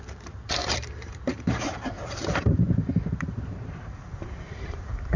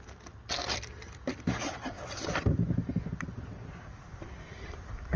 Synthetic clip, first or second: first